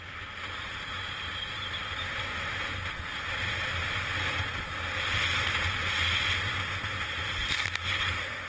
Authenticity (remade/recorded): recorded